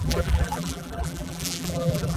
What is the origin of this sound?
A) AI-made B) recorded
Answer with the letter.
A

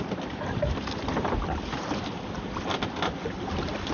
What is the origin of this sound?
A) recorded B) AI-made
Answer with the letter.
A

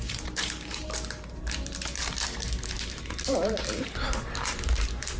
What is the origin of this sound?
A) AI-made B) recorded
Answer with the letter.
A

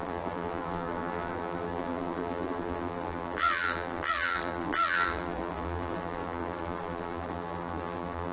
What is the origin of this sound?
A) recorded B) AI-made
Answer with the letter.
B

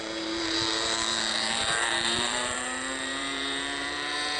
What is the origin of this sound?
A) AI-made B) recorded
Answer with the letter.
A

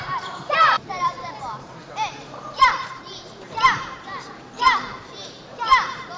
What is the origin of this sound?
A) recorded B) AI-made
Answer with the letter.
B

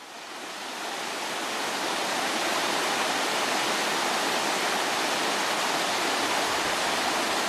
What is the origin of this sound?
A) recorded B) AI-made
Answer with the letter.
A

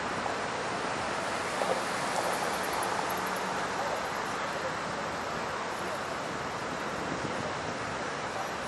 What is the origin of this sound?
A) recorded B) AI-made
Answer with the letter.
A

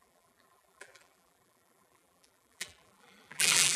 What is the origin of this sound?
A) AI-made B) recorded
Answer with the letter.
A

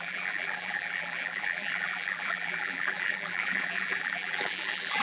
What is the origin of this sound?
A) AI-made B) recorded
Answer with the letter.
A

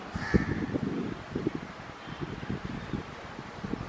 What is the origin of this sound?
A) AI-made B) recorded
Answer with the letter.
B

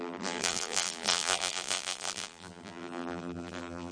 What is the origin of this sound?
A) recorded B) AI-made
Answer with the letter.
B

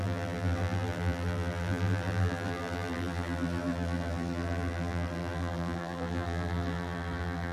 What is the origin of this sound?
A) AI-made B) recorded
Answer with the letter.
A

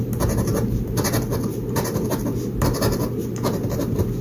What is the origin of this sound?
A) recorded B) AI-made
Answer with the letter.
A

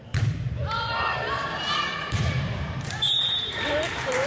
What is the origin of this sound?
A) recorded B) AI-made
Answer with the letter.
B